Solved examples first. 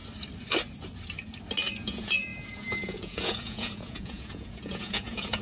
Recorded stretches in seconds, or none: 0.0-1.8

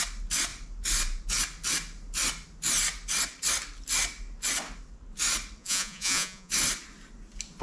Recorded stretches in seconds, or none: 0.0-5.6; 6.5-7.6

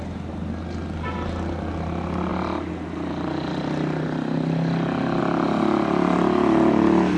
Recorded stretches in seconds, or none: 0.0-7.2

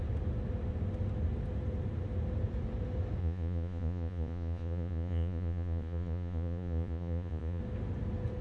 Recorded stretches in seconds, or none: 0.0-3.2; 7.6-8.4

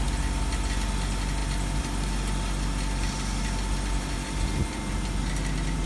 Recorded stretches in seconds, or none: 0.0-5.9

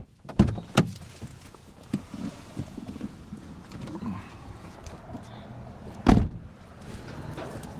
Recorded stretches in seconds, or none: 0.0-1.3; 4.8-7.8

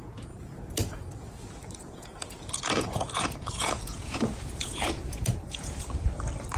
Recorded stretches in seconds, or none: 1.0-1.8; 5.8-6.6